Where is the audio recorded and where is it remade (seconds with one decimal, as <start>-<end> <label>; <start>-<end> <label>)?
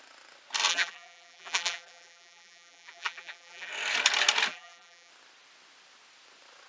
0.0-0.7 recorded; 0.7-3.7 remade; 3.7-4.5 recorded; 4.5-5.1 remade; 5.1-6.7 recorded